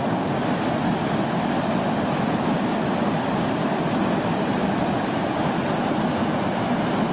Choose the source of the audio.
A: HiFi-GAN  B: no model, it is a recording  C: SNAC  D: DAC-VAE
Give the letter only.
B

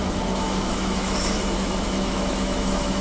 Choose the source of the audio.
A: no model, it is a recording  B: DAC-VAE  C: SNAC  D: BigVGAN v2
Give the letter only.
B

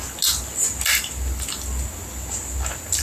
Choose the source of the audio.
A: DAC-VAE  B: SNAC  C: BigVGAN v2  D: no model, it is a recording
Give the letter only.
D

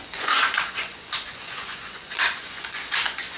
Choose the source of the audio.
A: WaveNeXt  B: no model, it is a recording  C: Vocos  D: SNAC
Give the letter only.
C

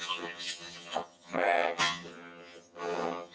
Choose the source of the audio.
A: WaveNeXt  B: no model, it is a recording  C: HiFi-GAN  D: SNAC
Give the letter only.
C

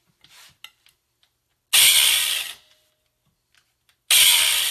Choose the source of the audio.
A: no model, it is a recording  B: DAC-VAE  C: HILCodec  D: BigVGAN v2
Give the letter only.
A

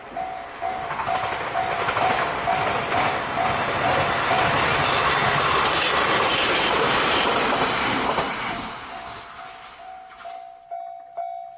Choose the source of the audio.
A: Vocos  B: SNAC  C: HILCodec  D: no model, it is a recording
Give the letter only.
D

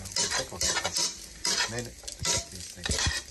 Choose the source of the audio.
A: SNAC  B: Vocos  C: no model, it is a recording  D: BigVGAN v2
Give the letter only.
C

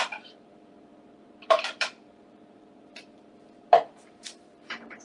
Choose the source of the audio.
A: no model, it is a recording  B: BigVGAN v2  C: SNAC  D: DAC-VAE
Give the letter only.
B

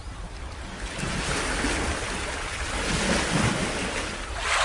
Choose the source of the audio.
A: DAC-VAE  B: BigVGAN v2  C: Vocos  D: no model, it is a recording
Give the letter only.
D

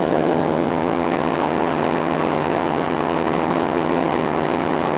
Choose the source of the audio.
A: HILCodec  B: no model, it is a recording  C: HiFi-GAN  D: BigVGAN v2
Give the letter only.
C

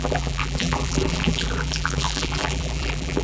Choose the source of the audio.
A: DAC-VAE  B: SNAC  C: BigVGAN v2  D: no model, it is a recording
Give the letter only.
C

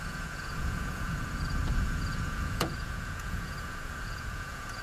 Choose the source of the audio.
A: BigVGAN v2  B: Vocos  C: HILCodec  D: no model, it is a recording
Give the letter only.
B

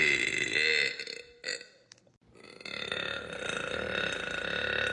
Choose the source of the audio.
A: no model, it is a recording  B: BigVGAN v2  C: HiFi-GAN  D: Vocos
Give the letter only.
A